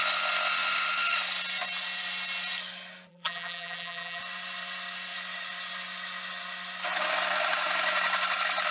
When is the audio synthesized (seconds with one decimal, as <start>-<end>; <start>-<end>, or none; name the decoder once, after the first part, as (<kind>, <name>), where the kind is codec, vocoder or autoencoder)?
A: 3.1-4.2 (vocoder, BigVGAN v2)